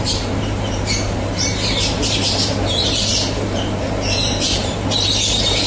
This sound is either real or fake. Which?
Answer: fake